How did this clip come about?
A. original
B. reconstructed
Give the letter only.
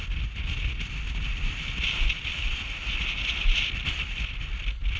A